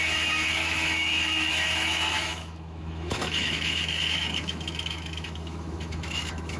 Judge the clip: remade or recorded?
remade